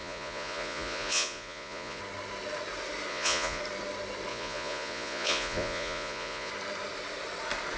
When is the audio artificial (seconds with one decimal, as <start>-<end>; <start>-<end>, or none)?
0.0-2.0; 3.1-3.6; 4.3-6.5